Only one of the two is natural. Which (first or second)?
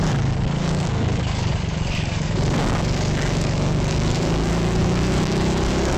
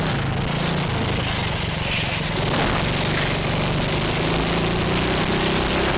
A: second